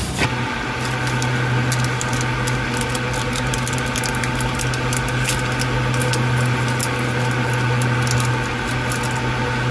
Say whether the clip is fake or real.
real